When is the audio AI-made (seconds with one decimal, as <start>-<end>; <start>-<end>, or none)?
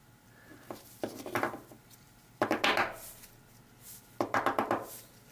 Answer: none